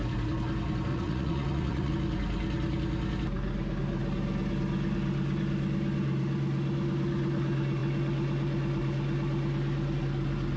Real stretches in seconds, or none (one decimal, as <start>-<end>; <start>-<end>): 0.0-0.9; 1.9-10.6